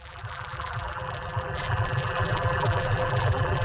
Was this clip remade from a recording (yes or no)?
yes